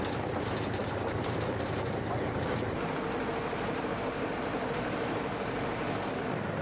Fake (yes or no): no